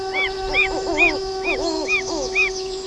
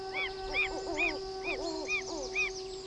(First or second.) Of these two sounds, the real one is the second